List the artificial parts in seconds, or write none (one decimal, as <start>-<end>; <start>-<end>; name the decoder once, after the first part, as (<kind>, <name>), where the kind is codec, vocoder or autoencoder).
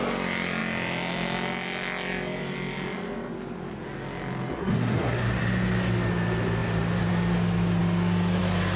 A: 4.6-5.2 (codec, SNAC)